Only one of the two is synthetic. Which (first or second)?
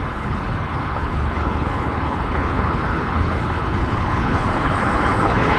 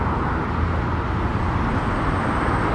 first